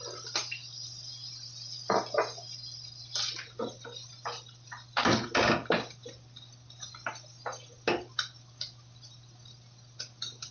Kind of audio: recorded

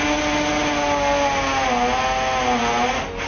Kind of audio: recorded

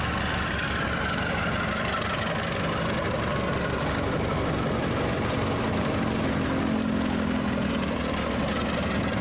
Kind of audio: recorded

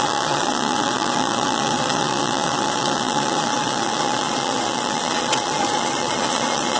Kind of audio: remade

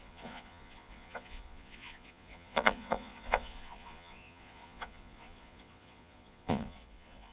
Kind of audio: remade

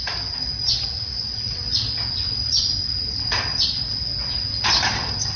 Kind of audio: recorded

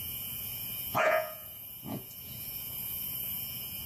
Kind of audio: remade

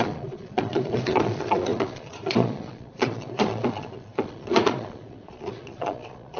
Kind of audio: remade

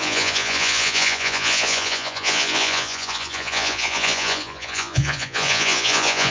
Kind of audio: remade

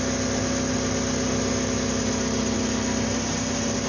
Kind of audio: recorded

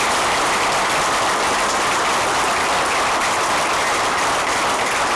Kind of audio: recorded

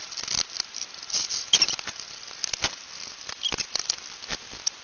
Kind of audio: recorded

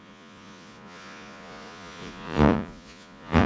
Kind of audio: remade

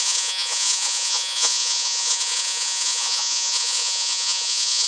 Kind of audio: remade